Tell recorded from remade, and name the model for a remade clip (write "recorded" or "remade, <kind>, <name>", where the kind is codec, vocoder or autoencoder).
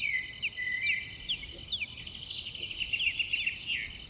recorded